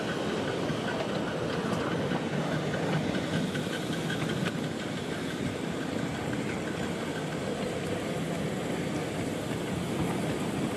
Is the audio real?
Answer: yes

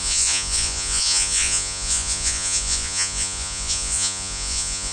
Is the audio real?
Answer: no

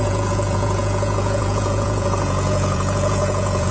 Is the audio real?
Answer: no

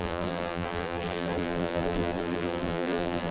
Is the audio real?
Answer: no